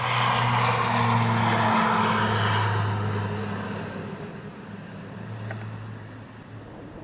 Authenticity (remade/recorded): recorded